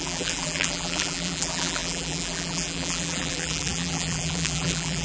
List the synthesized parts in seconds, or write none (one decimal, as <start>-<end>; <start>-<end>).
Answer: 0.0-5.0